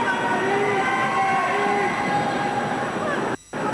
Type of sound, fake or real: real